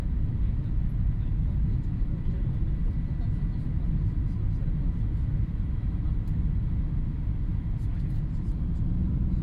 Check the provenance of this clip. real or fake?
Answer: real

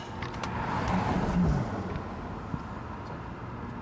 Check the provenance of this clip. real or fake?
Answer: real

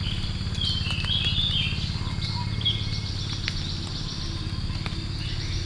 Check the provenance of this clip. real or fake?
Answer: real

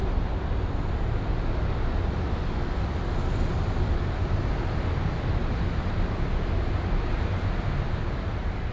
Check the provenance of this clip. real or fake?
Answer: real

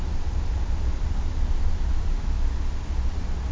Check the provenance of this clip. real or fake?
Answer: real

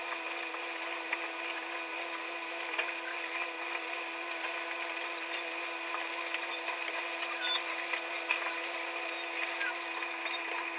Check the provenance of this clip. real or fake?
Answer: real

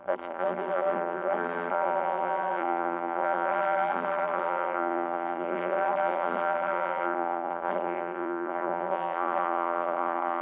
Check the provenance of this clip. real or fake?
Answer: fake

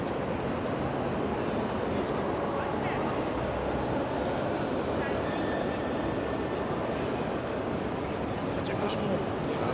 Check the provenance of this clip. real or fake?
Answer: real